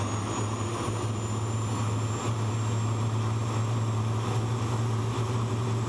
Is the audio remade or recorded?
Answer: recorded